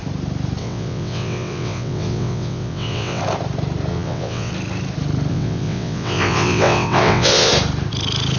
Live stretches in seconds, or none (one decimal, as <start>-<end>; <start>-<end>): 0.0-0.6; 3.2-3.9; 4.5-5.3; 7.5-8.4